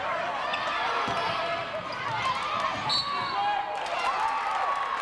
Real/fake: real